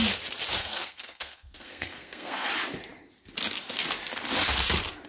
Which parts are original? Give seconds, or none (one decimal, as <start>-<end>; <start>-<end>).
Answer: 0.0-0.6; 2.5-5.1